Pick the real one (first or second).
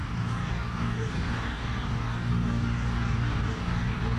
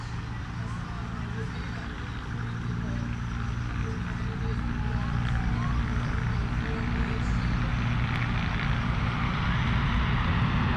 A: second